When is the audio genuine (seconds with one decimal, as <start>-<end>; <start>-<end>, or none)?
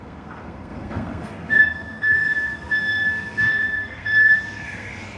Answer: none